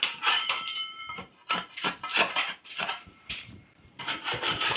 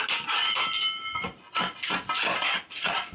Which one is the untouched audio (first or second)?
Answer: second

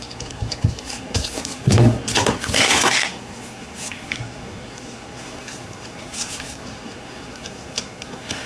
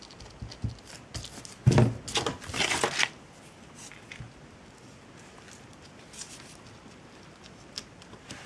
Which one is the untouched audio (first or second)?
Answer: second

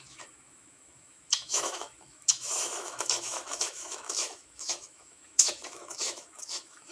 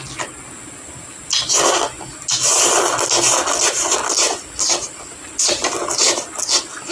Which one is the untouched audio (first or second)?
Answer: second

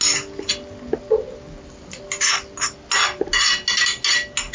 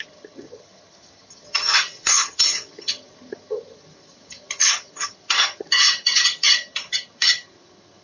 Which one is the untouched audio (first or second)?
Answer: first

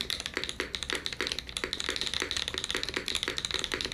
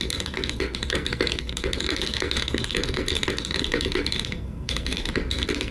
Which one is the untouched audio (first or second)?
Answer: first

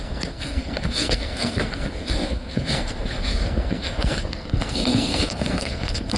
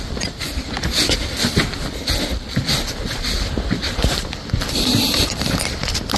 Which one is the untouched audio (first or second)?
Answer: second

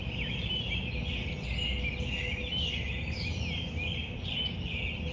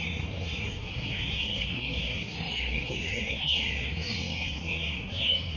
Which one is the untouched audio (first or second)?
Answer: first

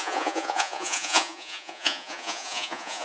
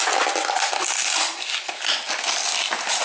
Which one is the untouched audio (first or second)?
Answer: second